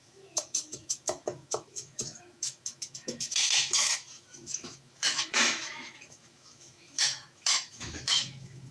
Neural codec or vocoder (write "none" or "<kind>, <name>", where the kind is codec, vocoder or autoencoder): autoencoder, DAC-VAE